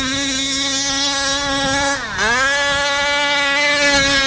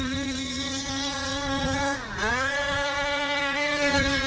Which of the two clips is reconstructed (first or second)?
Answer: second